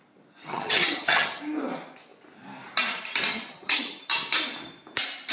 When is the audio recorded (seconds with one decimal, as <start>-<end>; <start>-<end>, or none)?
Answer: 0.0-0.4; 1.4-3.3; 4.0-5.3